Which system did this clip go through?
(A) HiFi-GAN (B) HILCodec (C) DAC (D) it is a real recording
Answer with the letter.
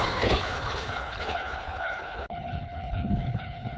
B